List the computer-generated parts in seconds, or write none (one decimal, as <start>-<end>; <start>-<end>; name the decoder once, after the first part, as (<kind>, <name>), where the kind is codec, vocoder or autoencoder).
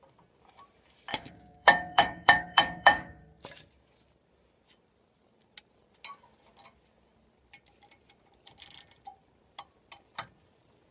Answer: 1.1-3.2 (codec, DAC)